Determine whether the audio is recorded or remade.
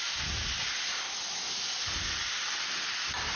recorded